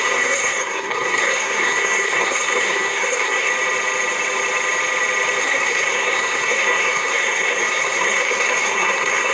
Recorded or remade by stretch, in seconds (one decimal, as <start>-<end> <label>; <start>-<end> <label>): 0.0-3.5 remade; 3.5-5.4 recorded; 5.4-9.3 remade